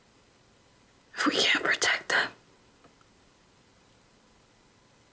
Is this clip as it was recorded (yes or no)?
yes